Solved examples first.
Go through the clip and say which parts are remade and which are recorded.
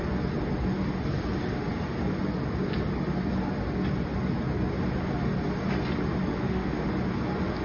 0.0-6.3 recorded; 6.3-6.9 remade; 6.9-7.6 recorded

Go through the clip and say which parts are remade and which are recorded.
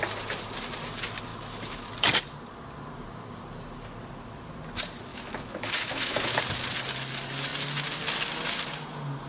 0.0-1.3 recorded; 1.3-1.9 remade; 1.9-5.1 recorded; 5.1-6.4 remade; 6.4-9.3 recorded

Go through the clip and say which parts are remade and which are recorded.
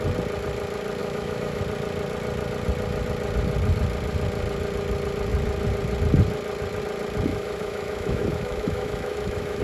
0.0-1.0 recorded; 1.0-1.6 remade; 1.6-7.3 recorded; 7.3-9.6 remade